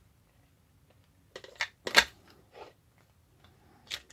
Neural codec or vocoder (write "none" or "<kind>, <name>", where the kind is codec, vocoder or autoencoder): none